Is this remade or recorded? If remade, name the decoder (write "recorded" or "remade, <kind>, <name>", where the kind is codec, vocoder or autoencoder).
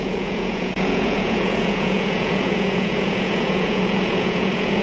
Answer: remade, vocoder, Vocos